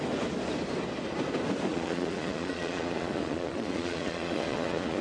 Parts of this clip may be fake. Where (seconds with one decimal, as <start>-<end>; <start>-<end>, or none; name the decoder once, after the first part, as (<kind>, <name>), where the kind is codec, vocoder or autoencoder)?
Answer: 1.7-5.0 (vocoder, Vocos)

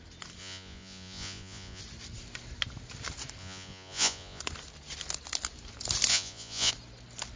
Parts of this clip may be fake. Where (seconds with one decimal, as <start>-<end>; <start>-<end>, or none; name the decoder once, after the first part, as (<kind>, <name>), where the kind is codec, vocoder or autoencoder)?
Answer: 0.4-1.8 (vocoder, Vocos); 3.4-4.4; 6.1-6.7

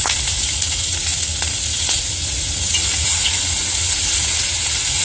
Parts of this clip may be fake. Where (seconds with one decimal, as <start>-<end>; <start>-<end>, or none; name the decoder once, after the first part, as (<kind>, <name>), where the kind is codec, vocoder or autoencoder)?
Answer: 0.0-5.0 (vocoder, Vocos)